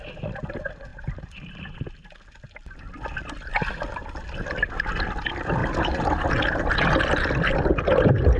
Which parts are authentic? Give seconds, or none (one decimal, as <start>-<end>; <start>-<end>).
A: 0.0-0.9; 1.7-4.0; 4.5-5.6; 6.3-8.4